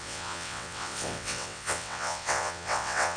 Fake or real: fake